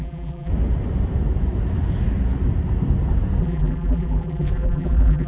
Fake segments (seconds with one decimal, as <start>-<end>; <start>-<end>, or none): 0.0-0.5; 3.4-5.3